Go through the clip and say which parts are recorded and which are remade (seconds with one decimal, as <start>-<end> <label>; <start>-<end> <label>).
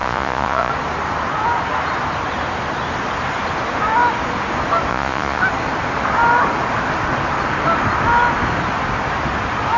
0.0-0.7 remade; 0.7-4.9 recorded; 4.9-5.4 remade; 5.4-9.8 recorded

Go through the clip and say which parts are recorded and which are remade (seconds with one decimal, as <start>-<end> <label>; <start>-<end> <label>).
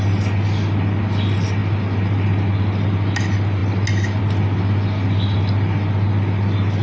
0.0-6.8 recorded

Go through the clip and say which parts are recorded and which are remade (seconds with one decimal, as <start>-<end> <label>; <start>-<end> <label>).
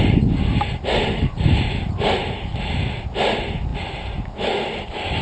0.0-5.2 recorded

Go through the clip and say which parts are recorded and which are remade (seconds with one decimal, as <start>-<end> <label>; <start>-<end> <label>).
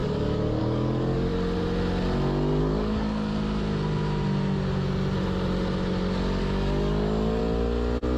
0.0-1.3 remade; 1.3-2.6 recorded; 2.6-3.3 remade; 3.3-6.4 recorded; 6.4-7.4 remade; 7.4-8.2 recorded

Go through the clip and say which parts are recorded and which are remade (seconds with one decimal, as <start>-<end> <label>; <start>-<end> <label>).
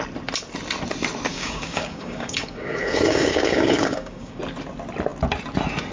0.0-1.3 recorded; 1.3-4.4 remade; 4.4-5.9 recorded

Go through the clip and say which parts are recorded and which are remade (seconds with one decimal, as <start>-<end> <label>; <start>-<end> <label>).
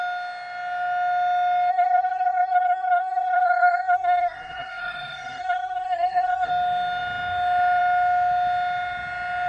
0.0-1.7 recorded; 1.7-6.5 remade; 6.5-9.5 recorded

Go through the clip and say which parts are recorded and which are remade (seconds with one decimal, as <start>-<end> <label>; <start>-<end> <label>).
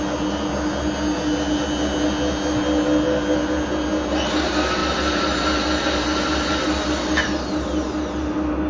0.0-8.7 recorded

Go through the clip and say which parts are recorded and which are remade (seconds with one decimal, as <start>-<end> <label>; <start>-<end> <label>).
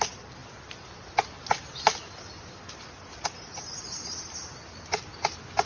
0.0-5.7 recorded